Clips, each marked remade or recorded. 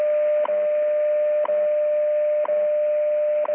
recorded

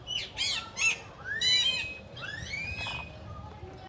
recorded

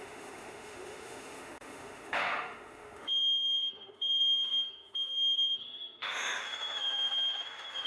remade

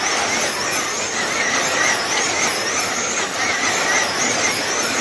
recorded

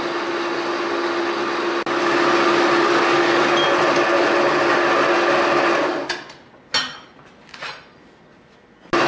recorded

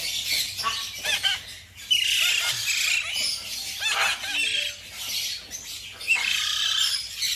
recorded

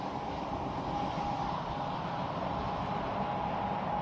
recorded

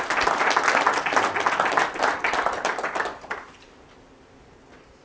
recorded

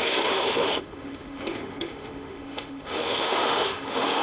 remade